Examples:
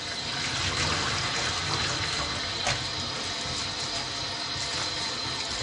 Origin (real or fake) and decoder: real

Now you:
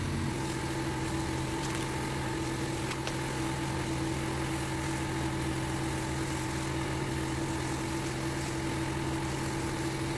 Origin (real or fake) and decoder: real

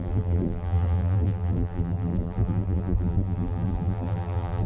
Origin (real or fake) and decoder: fake, vocoder, BigVGAN v2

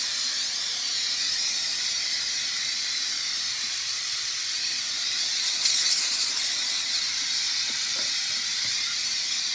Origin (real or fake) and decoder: fake, vocoder, BigVGAN v2